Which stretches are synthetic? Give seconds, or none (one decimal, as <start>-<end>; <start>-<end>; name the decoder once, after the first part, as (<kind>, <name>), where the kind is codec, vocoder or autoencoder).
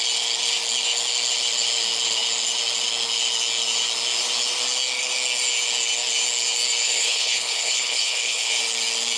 6.8-8.6 (codec, HILCodec)